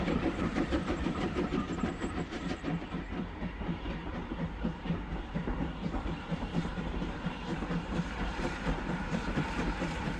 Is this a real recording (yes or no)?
no